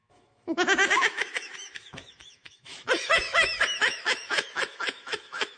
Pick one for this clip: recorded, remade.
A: remade